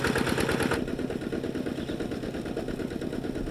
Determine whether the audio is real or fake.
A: real